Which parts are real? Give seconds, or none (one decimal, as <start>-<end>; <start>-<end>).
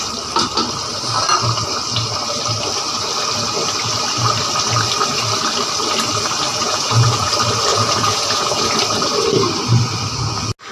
0.0-6.5; 7.3-7.7; 8.7-10.7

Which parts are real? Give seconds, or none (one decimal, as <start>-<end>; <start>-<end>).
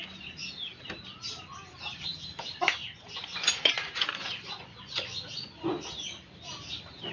0.0-2.8; 5.8-7.1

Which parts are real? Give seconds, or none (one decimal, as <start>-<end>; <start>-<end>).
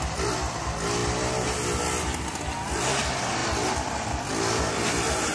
0.0-5.3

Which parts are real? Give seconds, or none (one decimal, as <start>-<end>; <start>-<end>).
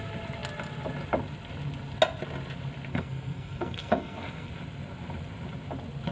0.0-2.9; 4.5-6.1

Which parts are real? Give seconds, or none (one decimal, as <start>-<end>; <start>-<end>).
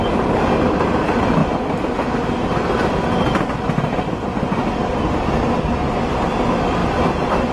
0.0-7.5